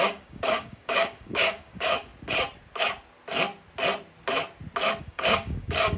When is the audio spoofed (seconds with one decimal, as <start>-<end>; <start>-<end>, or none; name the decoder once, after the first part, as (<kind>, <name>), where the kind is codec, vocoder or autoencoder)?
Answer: 0.0-2.1 (codec, DAC); 5.0-6.0